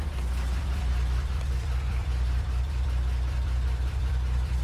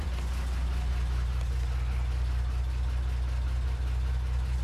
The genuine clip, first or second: second